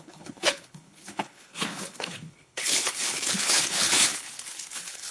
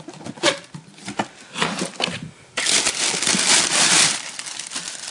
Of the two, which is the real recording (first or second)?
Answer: second